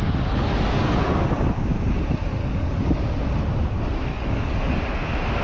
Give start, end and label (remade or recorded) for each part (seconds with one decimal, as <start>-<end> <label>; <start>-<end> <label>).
0.0-2.4 recorded; 2.4-3.0 remade; 3.0-4.1 recorded; 4.1-4.8 remade; 4.8-5.4 recorded